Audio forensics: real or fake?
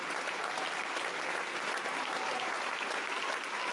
real